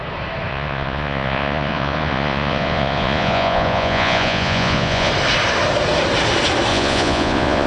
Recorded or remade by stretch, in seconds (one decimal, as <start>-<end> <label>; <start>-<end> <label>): 0.0-0.5 recorded; 0.5-5.1 remade; 5.1-6.7 recorded; 6.7-7.7 remade